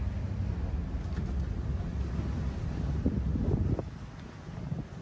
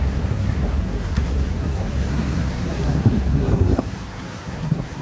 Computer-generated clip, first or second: second